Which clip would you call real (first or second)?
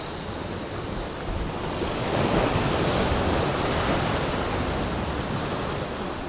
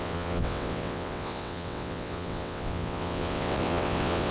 first